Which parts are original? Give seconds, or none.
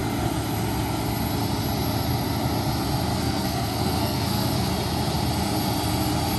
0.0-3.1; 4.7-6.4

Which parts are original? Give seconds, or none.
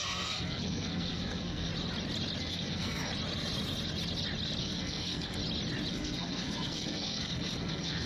1.7-2.4; 3.1-4.6; 5.4-5.9